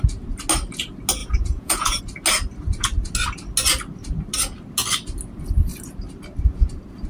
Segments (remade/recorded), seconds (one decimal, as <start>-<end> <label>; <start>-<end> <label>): 0.0-1.2 recorded; 1.2-2.0 remade; 2.0-7.1 recorded